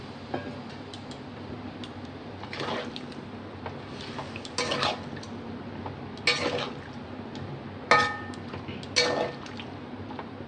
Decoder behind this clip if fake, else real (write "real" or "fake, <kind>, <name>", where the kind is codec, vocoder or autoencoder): real